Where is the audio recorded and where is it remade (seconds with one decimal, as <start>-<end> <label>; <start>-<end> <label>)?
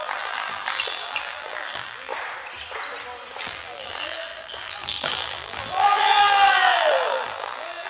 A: 0.0-2.1 remade; 2.1-3.4 recorded; 3.4-7.9 remade